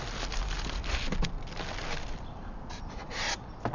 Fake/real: real